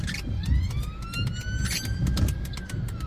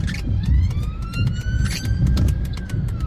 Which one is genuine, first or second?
first